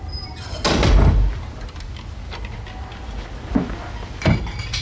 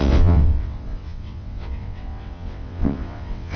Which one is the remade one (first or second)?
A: second